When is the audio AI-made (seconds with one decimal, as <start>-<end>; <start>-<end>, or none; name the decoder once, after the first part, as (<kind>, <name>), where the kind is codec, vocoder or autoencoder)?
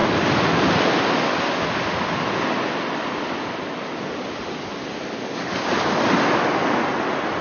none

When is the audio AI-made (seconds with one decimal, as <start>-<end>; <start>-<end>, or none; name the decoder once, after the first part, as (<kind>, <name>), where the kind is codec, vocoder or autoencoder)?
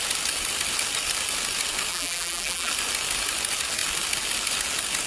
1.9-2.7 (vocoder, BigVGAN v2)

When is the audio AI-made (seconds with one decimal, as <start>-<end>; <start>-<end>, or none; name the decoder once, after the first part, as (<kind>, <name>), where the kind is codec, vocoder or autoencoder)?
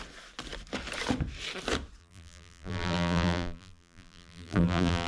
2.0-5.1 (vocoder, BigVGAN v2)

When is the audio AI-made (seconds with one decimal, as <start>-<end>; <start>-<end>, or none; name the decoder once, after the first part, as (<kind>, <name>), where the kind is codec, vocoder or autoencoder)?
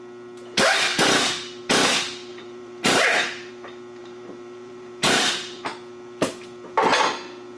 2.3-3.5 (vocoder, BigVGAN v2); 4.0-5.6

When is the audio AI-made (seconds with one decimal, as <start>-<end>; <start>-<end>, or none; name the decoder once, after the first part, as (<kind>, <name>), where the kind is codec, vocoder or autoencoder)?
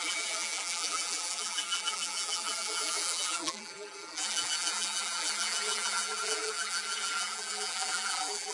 0.0-8.5 (vocoder, BigVGAN v2)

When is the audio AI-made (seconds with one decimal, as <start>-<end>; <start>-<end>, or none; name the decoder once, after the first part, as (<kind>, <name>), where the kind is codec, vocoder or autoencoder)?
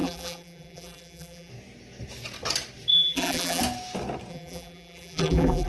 0.0-1.5 (vocoder, BigVGAN v2); 2.9-3.6; 4.3-5.7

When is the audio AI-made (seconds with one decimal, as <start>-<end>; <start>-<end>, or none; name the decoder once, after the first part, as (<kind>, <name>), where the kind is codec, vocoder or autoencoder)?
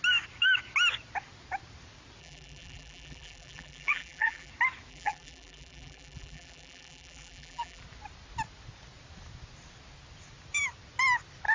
2.2-4.5 (vocoder, BigVGAN v2); 4.9-7.8